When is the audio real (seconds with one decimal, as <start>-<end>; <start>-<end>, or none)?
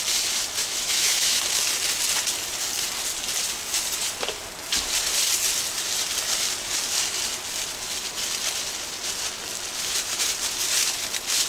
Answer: 0.0-0.6; 1.4-11.5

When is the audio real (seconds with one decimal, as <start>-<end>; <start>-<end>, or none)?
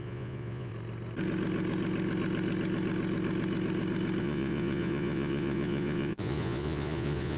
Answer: 0.7-4.2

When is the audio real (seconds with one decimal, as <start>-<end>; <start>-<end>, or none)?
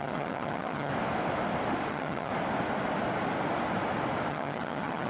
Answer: 0.9-1.9; 2.3-4.3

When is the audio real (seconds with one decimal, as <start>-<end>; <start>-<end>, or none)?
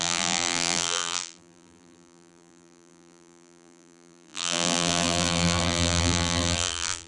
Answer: none